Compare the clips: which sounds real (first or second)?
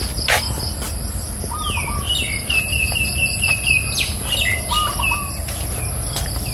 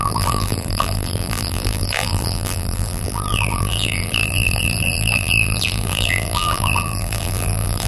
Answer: first